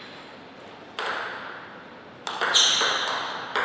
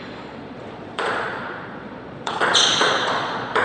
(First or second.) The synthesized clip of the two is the second